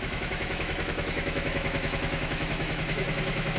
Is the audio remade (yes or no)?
yes